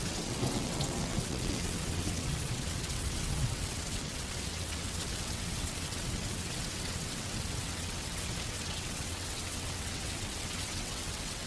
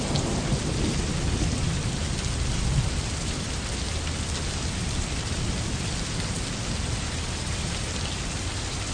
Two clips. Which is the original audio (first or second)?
second